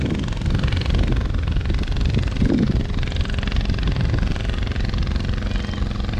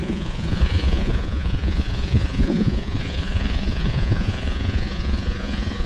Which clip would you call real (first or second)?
first